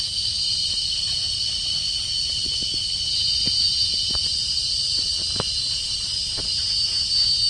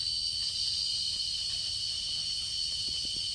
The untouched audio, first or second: second